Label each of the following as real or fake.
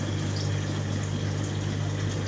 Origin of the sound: real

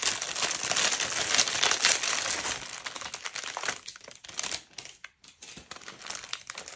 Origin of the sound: real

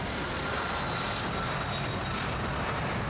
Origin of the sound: real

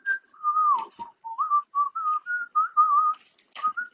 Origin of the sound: real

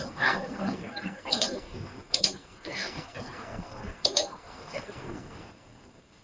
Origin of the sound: fake